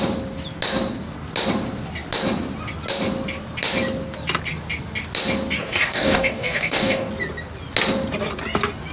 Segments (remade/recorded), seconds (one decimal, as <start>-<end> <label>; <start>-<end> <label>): 0.0-5.6 recorded; 5.6-7.1 remade; 7.1-8.9 recorded